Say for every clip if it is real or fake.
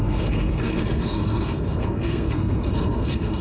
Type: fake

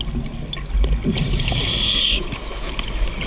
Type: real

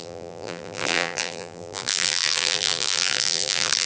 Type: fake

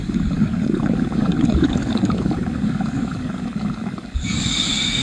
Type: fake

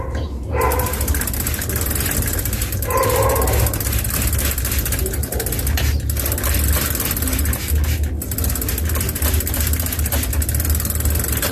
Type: real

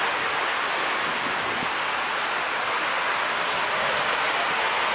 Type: real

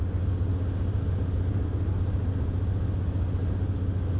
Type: real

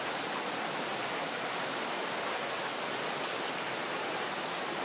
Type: real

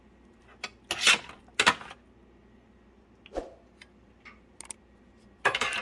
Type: real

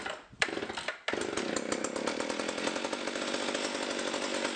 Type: real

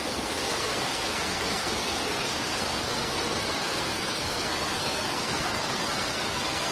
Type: fake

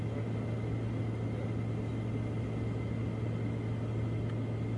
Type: real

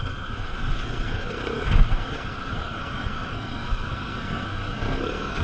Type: fake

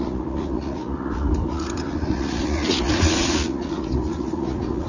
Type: fake